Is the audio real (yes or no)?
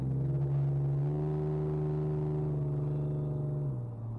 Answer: yes